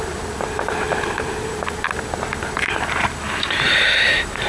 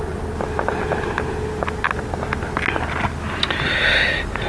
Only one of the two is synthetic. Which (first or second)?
first